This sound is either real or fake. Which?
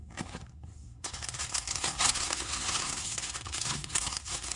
fake